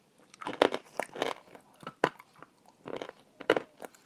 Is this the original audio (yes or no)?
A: yes